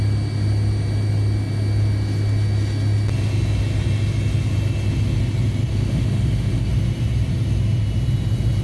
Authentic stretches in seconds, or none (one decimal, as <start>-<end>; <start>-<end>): 0.0-5.7; 6.7-8.6